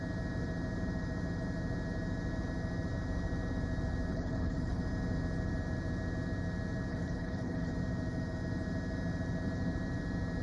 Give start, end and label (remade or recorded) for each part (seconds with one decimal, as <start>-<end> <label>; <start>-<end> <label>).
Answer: 0.0-4.1 recorded; 4.1-4.8 remade; 4.8-6.9 recorded; 6.9-7.7 remade; 7.7-10.4 recorded